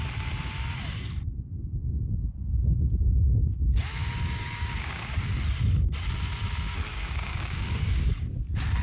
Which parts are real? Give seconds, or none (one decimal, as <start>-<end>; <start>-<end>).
0.0-4.0; 5.3-6.9; 8.1-8.8